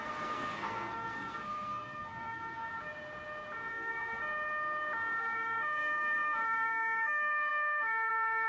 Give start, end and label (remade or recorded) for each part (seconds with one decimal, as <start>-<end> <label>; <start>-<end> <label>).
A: 0.0-2.7 remade; 2.7-3.7 recorded; 3.7-4.2 remade; 4.2-5.2 recorded; 5.2-8.5 remade